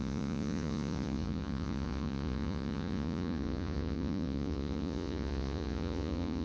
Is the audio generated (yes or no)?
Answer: yes